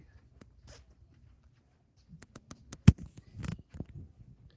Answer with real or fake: real